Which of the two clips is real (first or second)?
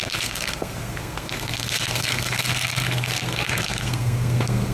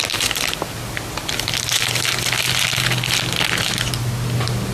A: second